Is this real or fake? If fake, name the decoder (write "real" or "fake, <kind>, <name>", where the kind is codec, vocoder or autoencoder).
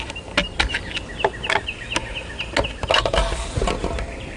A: real